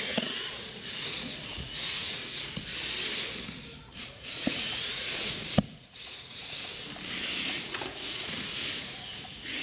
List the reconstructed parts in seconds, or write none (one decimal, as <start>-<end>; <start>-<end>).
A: 0.0-2.7; 4.0-6.7; 7.5-9.6